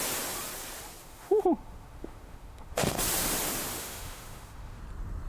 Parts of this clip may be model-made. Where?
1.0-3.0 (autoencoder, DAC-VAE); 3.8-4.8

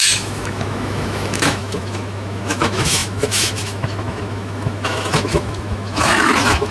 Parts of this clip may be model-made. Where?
0.0-6.7 (autoencoder, DAC-VAE)

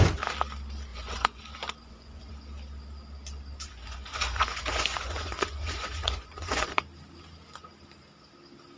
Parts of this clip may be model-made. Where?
0.9-1.4 (vocoder, Vocos); 1.8-2.3; 3.7-6.8

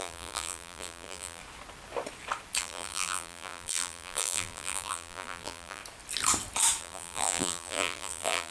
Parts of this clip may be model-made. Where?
0.0-1.4 (vocoder, BigVGAN v2); 2.6-5.8; 6.8-8.5

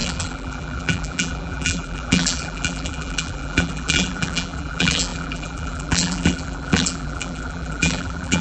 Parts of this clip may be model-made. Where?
0.0-8.4 (vocoder, BigVGAN v2)